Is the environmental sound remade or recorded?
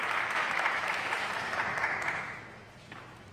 remade